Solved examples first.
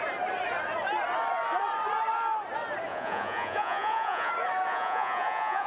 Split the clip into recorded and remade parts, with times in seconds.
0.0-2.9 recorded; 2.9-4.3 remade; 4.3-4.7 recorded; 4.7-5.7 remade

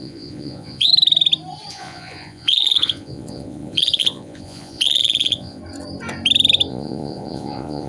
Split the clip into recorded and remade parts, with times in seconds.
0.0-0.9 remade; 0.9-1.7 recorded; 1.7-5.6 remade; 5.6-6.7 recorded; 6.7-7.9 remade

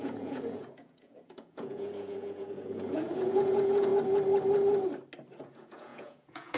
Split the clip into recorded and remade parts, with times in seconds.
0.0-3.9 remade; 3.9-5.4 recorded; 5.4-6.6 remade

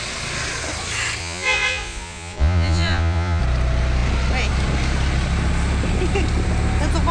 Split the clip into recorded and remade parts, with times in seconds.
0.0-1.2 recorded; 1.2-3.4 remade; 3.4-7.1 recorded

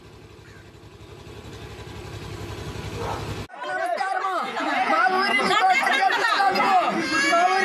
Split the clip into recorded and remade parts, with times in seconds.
0.0-3.8 recorded; 3.8-6.9 remade; 6.9-7.6 recorded

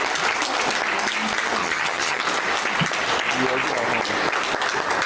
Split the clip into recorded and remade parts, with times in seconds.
0.0-1.6 recorded; 1.6-2.2 remade; 2.2-5.1 recorded

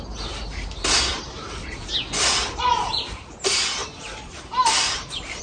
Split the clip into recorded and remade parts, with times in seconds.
0.0-1.1 recorded; 1.1-1.9 remade; 1.9-2.4 recorded; 2.4-3.3 remade; 3.3-3.8 recorded; 3.8-5.4 remade